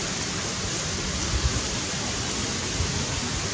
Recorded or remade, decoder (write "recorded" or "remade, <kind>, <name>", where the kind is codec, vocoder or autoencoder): recorded